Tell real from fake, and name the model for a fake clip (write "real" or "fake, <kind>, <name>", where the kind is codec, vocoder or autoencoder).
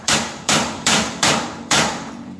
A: fake, vocoder, BigVGAN v2